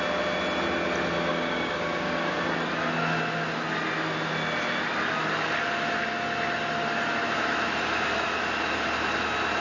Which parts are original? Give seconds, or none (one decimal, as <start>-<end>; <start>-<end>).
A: 0.0-1.3; 2.4-9.6